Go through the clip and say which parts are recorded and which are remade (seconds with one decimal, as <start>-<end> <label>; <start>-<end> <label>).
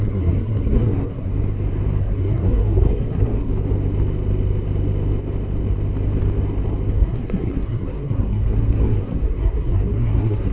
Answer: 0.0-1.3 remade; 1.3-2.0 recorded; 2.0-3.5 remade; 3.5-6.9 recorded; 6.9-10.5 remade